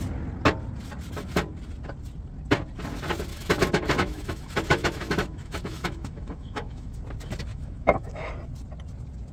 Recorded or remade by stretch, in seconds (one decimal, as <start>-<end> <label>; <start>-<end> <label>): 0.0-3.3 recorded; 3.3-7.0 remade; 7.0-7.5 recorded; 7.5-8.3 remade; 8.3-9.3 recorded